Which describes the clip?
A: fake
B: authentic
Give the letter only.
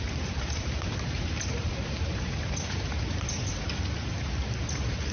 A